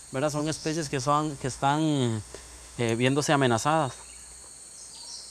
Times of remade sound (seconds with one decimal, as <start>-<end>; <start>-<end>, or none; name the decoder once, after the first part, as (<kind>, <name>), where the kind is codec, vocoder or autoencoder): 0.4-2.8 (autoencoder, DAC-VAE)